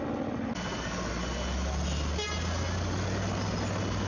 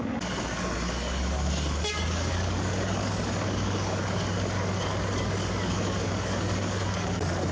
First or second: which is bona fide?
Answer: first